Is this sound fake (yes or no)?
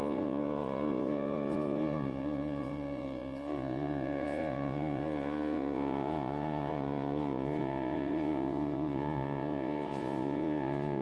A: yes